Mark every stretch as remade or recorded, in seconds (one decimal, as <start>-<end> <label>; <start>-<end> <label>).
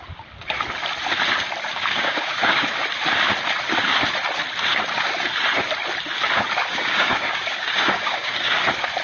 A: 0.0-1.7 recorded; 1.7-2.7 remade; 2.7-6.6 recorded; 6.6-8.6 remade; 8.6-9.0 recorded